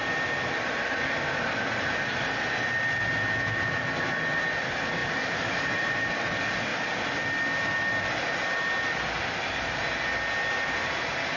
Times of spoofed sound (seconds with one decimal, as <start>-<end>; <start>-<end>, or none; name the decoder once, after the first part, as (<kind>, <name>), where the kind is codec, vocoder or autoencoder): 5.0-6.3 (vocoder, BigVGAN v2)